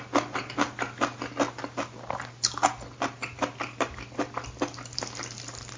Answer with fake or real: real